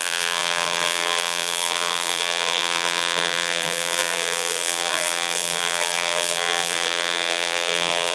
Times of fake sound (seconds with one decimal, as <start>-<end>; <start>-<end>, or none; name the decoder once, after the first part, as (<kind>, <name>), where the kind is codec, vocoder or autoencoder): 0.0-8.1 (vocoder, BigVGAN v2)